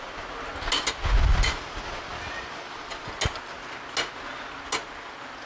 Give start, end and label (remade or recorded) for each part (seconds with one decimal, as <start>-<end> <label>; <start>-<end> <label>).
0.0-5.5 recorded